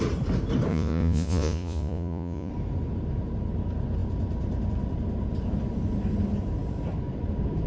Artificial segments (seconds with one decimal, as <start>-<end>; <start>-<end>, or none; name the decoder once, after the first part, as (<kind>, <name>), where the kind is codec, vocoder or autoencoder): 0.7-2.5 (vocoder, Vocos)